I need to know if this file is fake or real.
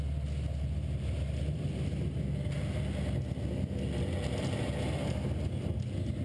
real